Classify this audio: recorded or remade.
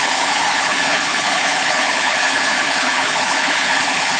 remade